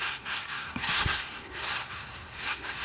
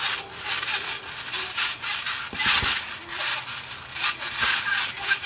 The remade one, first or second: first